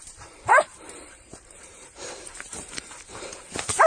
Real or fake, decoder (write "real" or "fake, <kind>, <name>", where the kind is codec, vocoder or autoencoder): fake, vocoder, BigVGAN v2